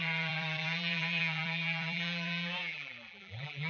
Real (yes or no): no